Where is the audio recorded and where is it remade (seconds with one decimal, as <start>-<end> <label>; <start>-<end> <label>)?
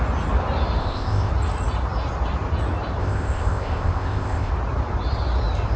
0.0-0.8 recorded; 0.8-1.3 remade; 1.3-3.0 recorded; 3.0-4.5 remade; 4.5-5.8 recorded